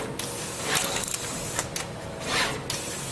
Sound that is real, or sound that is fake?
real